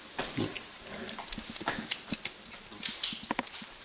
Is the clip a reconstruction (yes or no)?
no